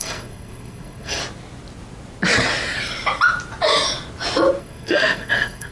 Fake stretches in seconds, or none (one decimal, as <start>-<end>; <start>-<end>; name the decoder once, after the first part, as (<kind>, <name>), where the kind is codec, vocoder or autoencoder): 0.0-1.2 (codec, SNAC); 4.6-5.7